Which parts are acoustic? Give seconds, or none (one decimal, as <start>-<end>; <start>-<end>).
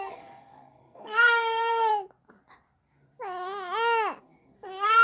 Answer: 1.9-4.2